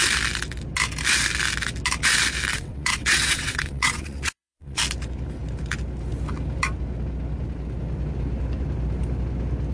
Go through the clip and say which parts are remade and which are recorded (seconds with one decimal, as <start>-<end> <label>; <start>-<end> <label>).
0.0-2.5 recorded; 2.5-4.8 remade; 4.8-9.7 recorded

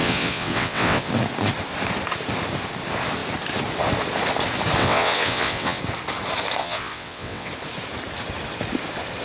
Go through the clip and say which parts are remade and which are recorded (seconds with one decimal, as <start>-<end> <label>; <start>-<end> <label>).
0.0-1.1 remade; 1.1-4.8 recorded; 4.8-5.8 remade; 5.8-6.6 recorded; 6.6-7.5 remade; 7.5-9.2 recorded

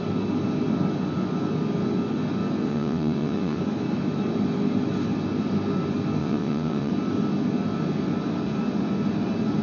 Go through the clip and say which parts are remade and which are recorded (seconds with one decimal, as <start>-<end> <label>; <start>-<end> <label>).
0.0-2.7 recorded; 2.7-3.6 remade; 3.6-6.2 recorded; 6.2-6.9 remade; 6.9-9.6 recorded

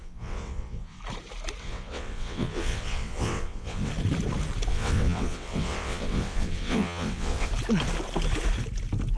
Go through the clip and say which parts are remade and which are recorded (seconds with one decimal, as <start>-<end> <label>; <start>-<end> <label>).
0.0-1.0 remade; 1.0-1.6 recorded; 1.6-3.9 remade; 3.9-4.7 recorded; 4.7-7.5 remade; 7.5-9.2 recorded

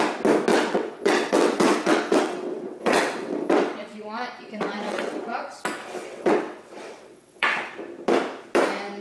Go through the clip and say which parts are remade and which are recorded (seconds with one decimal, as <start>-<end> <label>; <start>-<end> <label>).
0.0-0.5 recorded; 0.5-5.6 remade; 5.6-6.0 recorded; 6.0-7.7 remade; 7.7-9.0 recorded

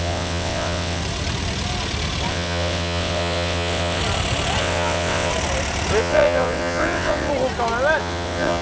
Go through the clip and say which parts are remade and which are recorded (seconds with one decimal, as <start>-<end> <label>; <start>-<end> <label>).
0.0-1.0 remade; 1.0-2.3 recorded; 2.3-4.0 remade; 4.0-4.6 recorded; 4.6-5.3 remade; 5.3-6.0 recorded; 6.0-7.3 remade; 7.3-8.0 recorded; 8.0-8.6 remade

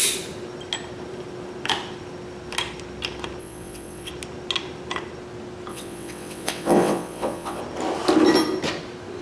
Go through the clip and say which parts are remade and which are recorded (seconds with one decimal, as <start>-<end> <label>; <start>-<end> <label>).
0.0-3.4 recorded; 3.4-4.1 remade; 4.1-5.7 recorded; 5.7-7.6 remade; 7.6-9.2 recorded

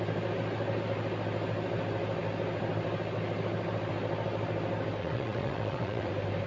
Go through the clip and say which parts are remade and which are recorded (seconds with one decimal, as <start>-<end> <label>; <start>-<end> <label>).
0.0-5.0 recorded; 5.0-6.1 remade; 6.1-6.5 recorded